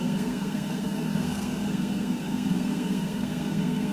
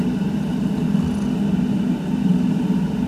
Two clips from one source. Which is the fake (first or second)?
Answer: first